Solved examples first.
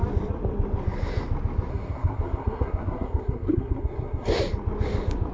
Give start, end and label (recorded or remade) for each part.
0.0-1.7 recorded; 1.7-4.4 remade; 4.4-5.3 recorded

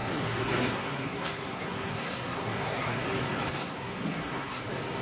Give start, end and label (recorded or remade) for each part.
0.0-3.0 remade; 3.0-3.6 recorded; 3.6-4.6 remade; 4.6-5.0 recorded

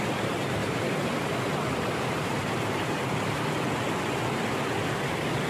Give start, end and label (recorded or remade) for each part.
0.0-0.6 recorded; 0.6-3.5 remade; 3.5-5.5 recorded